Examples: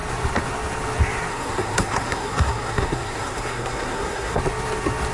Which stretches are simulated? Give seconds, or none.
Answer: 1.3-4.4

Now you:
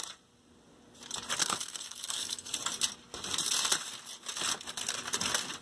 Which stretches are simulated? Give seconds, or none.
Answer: 1.4-2.5

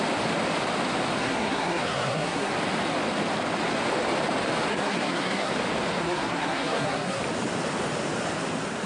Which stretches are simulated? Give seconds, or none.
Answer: 1.2-2.5; 4.7-5.5; 6.0-7.2